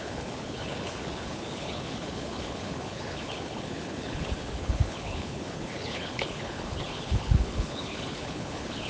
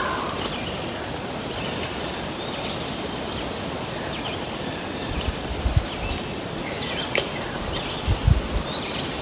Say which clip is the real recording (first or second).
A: second